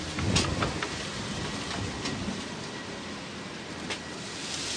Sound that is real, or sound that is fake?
real